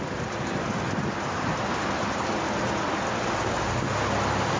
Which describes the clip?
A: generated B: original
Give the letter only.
B